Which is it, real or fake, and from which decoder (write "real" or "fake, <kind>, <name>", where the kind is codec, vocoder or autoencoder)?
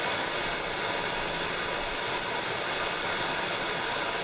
real